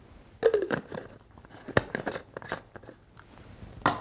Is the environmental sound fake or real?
real